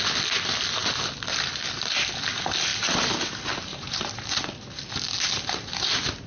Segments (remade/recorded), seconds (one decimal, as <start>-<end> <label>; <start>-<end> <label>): 0.0-3.7 recorded; 3.7-4.3 remade; 4.3-6.3 recorded